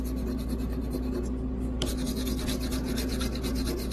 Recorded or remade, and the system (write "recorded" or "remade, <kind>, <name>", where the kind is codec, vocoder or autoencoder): recorded